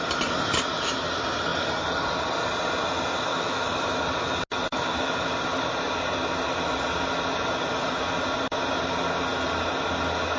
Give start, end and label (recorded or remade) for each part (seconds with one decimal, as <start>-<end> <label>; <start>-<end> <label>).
0.0-3.3 recorded; 3.3-4.0 remade; 4.0-4.7 recorded; 4.7-5.3 remade; 5.3-10.4 recorded

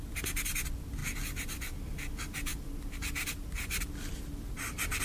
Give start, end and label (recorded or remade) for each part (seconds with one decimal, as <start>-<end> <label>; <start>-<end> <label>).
0.0-5.0 recorded

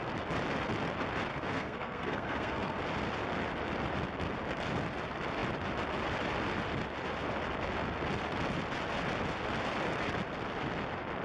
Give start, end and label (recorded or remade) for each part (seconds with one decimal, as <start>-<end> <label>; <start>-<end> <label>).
0.0-1.3 recorded; 1.3-2.8 remade; 2.8-11.2 recorded

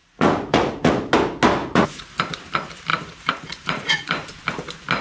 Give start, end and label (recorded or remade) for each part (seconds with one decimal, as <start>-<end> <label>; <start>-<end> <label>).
0.0-0.9 remade; 0.9-1.6 recorded; 1.6-2.2 remade; 2.2-2.9 recorded; 2.9-4.3 remade; 4.3-5.0 recorded

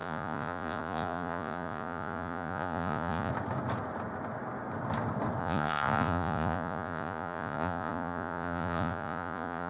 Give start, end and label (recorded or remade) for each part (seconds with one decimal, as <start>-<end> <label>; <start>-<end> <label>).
0.0-3.3 remade; 3.3-5.4 recorded; 5.4-9.7 remade

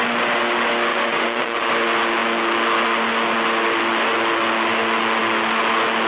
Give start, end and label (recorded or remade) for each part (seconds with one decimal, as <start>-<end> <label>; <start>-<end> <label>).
0.0-0.9 recorded; 0.9-1.7 remade; 1.7-6.1 recorded

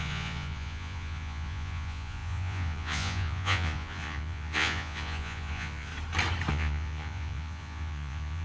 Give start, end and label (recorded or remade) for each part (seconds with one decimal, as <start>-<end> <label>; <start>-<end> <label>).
0.0-5.9 remade; 5.9-6.5 recorded; 6.5-8.4 remade

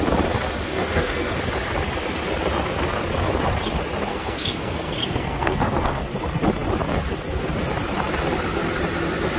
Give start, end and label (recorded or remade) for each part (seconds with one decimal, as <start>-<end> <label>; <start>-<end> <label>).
0.0-0.7 recorded; 0.7-1.4 remade; 1.4-4.1 recorded; 4.1-6.0 remade; 6.0-9.4 recorded